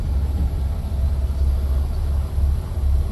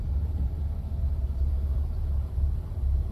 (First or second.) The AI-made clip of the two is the second